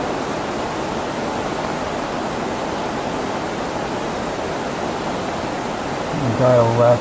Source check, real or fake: real